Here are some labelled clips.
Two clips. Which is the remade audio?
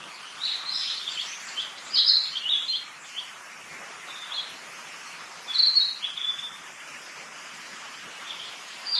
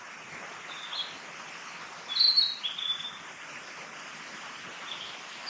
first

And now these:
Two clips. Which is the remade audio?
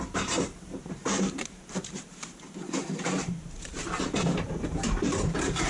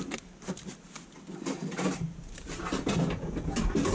first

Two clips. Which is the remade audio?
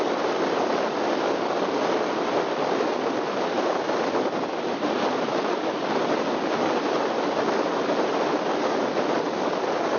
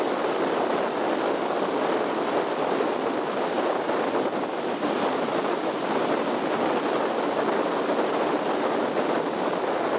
first